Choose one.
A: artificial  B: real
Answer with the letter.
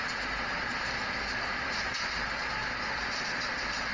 B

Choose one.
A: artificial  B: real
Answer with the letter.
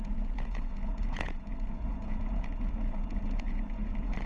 A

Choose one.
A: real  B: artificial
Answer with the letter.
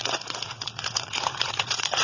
B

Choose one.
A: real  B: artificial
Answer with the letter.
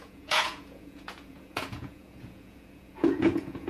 B